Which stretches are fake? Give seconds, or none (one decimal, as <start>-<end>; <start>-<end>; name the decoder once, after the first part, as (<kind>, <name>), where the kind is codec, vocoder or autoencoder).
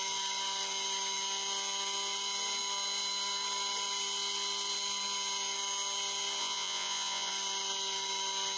6.4-7.3 (vocoder, Vocos)